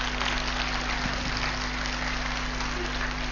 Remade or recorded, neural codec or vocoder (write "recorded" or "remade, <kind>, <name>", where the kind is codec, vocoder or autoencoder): recorded